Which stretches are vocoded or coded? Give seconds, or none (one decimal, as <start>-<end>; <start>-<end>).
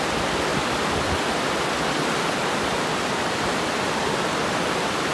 0.5-3.6